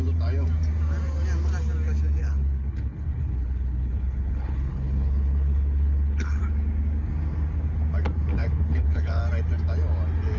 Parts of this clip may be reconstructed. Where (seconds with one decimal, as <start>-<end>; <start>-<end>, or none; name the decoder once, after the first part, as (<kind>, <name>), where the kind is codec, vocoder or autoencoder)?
2.2-6.4 (codec, HILCodec); 8.3-9.2